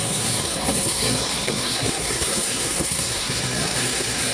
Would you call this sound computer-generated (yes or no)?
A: yes